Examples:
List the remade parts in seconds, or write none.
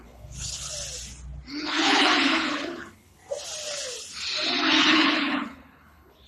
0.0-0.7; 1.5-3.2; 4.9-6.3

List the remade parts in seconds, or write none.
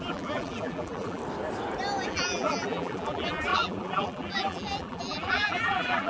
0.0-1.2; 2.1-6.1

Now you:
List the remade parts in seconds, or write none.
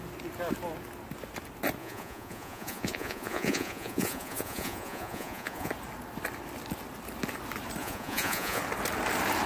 1.8-5.7; 7.8-8.6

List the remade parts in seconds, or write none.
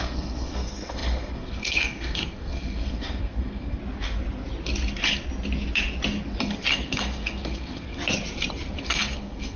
0.0-3.8; 6.7-8.0; 8.8-9.6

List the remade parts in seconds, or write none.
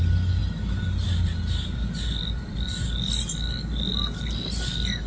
none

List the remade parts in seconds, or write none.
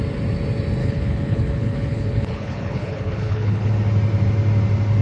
0.8-3.7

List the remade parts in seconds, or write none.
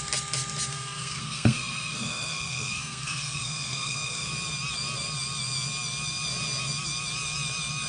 0.7-4.3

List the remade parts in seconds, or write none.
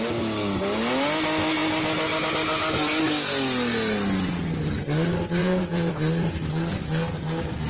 5.4-5.9